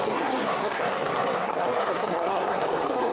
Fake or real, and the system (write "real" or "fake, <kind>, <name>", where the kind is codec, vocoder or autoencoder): fake, codec, SNAC